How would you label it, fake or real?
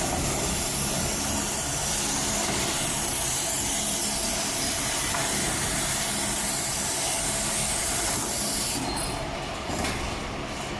real